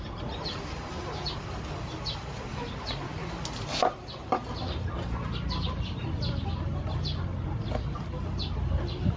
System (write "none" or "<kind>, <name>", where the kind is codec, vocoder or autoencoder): none